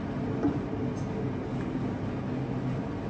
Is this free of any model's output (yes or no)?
yes